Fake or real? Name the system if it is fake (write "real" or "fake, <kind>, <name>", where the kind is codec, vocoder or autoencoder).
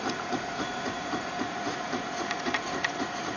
fake, vocoder, Vocos